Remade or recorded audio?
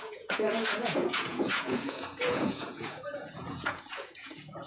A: remade